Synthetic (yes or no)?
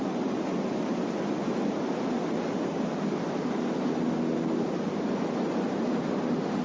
no